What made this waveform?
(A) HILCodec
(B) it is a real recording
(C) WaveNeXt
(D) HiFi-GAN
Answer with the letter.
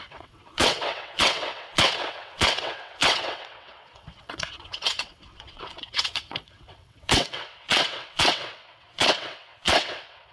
C